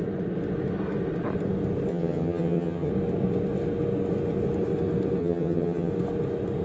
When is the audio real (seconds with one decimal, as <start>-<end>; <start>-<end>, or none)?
0.0-1.9; 2.9-5.2; 5.9-6.6